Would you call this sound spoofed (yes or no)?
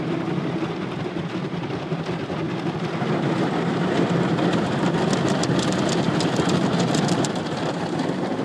no